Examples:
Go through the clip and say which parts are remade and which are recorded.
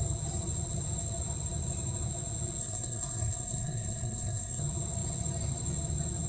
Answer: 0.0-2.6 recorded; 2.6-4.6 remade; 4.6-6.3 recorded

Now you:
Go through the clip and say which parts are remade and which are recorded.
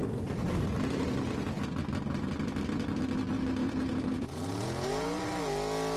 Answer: 0.0-3.6 recorded; 3.6-5.2 remade; 5.2-6.0 recorded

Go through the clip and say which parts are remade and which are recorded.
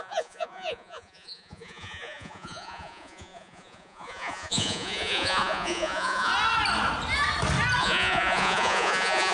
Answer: 0.0-6.3 remade; 6.3-7.8 recorded; 7.8-9.3 remade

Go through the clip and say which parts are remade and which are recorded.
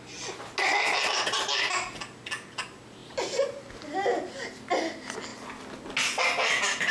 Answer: 0.0-6.9 recorded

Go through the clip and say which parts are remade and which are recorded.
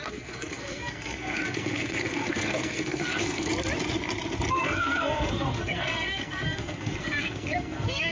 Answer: 0.0-3.5 remade; 3.5-4.5 recorded; 4.5-8.1 remade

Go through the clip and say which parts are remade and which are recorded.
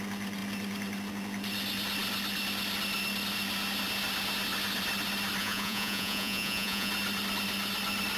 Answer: 0.0-5.4 recorded; 5.4-6.9 remade; 6.9-8.2 recorded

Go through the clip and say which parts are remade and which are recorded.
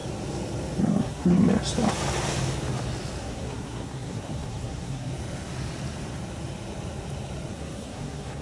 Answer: 0.0-0.8 recorded; 0.8-1.4 remade; 1.4-3.2 recorded; 3.2-5.1 remade; 5.1-7.5 recorded; 7.5-8.4 remade